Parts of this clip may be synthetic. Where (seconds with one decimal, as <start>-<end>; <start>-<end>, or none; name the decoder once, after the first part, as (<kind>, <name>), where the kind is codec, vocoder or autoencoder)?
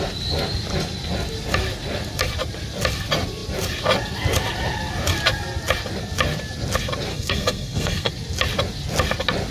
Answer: 7.1-8.1 (codec, SNAC)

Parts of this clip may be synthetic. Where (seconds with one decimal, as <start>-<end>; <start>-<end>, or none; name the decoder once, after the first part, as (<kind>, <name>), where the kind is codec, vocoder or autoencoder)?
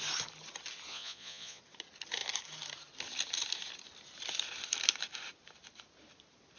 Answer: 0.9-1.6 (vocoder, Vocos)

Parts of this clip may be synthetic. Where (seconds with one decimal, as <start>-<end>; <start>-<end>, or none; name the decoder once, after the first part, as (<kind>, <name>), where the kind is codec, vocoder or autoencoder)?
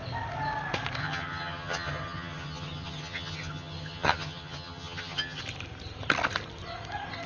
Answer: 1.0-5.4 (vocoder, HiFi-GAN)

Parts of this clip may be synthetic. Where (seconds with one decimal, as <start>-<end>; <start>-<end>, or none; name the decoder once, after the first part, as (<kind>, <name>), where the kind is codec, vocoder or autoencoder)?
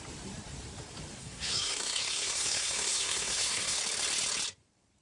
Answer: 1.2-3.8 (codec, SNAC)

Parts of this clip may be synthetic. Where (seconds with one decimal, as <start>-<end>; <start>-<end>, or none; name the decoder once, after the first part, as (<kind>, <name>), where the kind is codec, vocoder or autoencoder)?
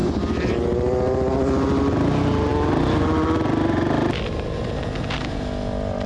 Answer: none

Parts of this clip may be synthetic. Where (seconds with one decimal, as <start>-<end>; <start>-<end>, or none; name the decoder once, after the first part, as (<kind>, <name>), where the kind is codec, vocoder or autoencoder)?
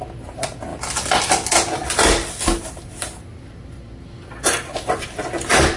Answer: 0.7-2.3 (vocoder, BigVGAN v2)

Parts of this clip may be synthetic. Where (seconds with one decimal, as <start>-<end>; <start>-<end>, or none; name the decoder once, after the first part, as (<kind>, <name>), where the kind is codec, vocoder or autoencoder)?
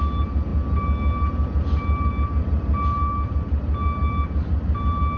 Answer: none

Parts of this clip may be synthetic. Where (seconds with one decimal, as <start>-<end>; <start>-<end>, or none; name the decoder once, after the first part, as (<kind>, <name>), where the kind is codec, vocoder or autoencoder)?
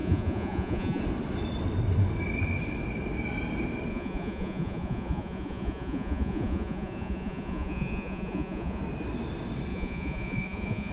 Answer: 0.0-1.0 (vocoder, Vocos); 3.9-8.8; 9.7-10.9